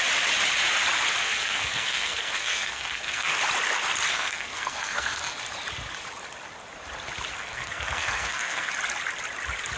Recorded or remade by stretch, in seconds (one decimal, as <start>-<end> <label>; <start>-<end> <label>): 0.0-1.2 recorded; 1.2-3.4 remade; 3.4-4.1 recorded; 4.1-5.4 remade; 5.4-7.3 recorded; 7.3-8.7 remade; 8.7-9.8 recorded